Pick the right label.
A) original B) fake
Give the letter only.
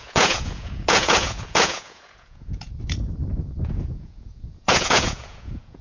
B